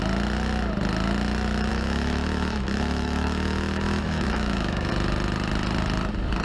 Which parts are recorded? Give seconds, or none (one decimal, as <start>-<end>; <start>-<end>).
0.0-1.7; 4.9-6.4